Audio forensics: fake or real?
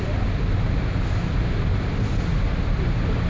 real